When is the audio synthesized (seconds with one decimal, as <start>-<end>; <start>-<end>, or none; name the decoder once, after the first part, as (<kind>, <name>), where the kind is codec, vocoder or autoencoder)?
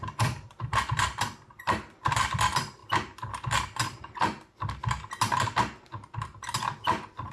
0.0-2.8 (vocoder, BigVGAN v2); 6.8-7.3